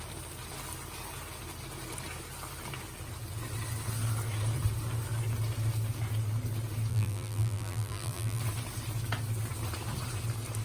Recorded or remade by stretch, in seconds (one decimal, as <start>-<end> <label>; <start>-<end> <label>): 0.0-6.9 recorded; 6.9-8.4 remade; 8.4-10.6 recorded

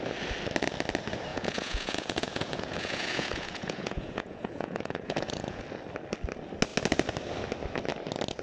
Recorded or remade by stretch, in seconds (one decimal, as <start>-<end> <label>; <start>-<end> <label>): 0.0-1.3 recorded; 1.3-5.6 remade; 5.6-8.4 recorded

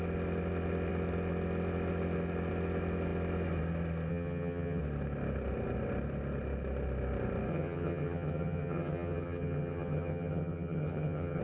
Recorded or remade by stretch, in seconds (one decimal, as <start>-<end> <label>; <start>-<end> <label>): 0.0-4.1 recorded; 4.1-4.8 remade; 4.8-7.5 recorded; 7.5-11.4 remade

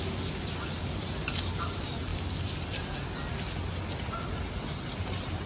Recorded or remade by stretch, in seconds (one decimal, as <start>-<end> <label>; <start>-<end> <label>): 0.0-5.5 recorded

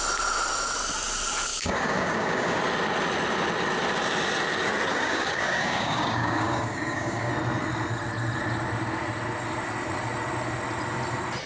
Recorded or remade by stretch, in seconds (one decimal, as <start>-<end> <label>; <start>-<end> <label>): 0.0-1.5 recorded; 1.5-2.6 remade; 2.6-4.9 recorded; 4.9-7.3 remade; 7.3-11.5 recorded

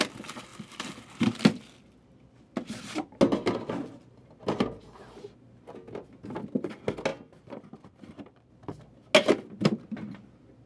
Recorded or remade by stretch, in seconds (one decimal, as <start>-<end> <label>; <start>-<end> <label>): 0.0-7.1 recorded; 7.1-8.5 remade; 8.5-10.7 recorded